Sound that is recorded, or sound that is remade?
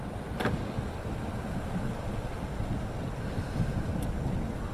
recorded